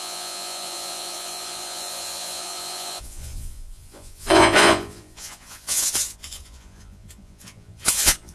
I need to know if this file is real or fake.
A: fake